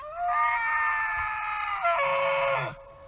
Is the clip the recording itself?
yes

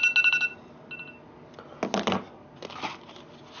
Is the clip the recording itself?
yes